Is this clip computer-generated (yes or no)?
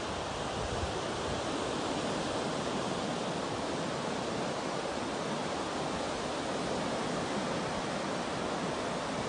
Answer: no